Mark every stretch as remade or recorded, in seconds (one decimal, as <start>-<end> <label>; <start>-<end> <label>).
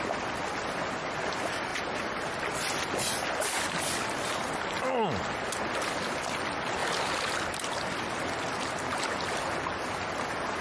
0.0-10.6 recorded